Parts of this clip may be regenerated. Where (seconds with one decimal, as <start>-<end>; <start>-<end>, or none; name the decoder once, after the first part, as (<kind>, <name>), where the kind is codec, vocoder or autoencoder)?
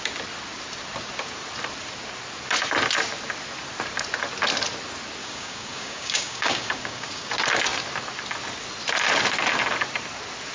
5.2-7.3 (codec, DAC)